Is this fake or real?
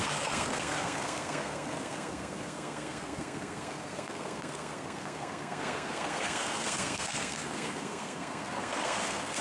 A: fake